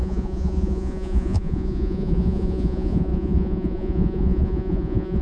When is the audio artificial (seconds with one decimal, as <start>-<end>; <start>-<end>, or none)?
0.0-5.2